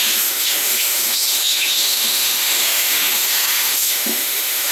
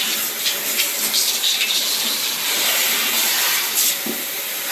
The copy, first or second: first